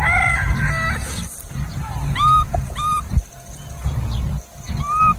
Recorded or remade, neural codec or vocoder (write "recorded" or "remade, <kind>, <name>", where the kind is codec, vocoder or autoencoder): recorded